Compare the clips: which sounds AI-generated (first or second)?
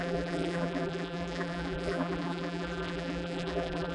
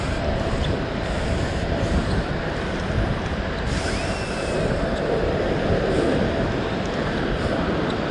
first